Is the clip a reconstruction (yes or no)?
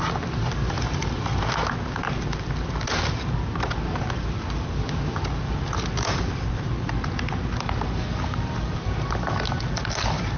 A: no